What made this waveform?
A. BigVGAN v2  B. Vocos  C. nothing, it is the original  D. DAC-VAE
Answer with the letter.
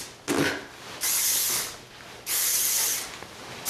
C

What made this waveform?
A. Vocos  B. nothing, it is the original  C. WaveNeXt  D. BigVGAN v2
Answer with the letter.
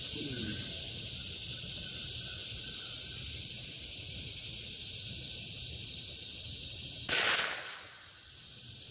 B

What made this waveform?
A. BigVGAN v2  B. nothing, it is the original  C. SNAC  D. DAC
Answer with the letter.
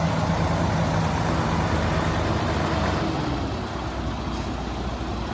B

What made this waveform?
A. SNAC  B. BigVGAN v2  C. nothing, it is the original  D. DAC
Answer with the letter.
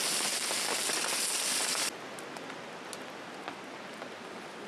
C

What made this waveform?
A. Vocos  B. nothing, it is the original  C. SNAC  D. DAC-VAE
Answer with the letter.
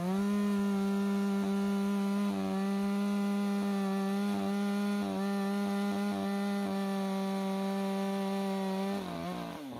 B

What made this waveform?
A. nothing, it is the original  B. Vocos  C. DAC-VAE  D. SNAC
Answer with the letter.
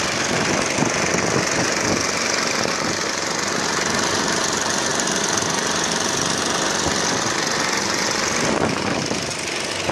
A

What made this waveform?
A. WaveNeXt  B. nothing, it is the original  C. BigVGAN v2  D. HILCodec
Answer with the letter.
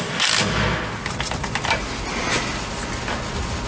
B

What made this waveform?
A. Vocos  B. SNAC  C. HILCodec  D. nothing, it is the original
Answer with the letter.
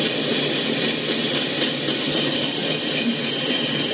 D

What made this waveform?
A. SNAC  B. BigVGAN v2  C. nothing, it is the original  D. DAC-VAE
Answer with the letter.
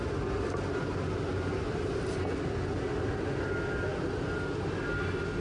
C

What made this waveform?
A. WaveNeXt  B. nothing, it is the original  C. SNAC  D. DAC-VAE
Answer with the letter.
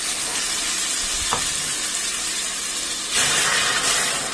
B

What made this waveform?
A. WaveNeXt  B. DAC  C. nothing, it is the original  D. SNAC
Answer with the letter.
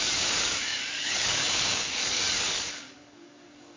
B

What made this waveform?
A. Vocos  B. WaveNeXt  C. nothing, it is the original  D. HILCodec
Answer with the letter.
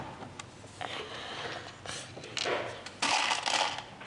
C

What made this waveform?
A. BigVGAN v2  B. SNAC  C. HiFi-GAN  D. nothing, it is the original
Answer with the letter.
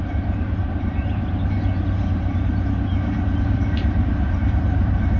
A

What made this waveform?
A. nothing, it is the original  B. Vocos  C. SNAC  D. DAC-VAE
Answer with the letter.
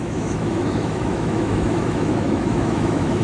D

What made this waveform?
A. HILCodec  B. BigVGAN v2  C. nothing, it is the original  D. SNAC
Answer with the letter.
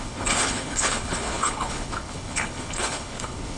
A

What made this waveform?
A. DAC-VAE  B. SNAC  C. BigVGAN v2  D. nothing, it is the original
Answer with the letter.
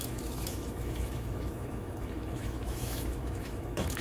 A